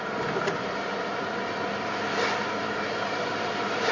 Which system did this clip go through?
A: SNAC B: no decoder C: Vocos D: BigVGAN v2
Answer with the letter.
B